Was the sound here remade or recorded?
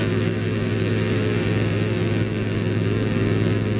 remade